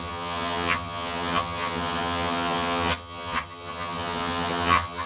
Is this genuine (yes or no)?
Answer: no